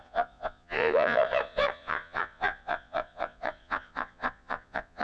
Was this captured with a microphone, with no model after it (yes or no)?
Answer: no